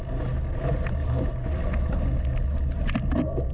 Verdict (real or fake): real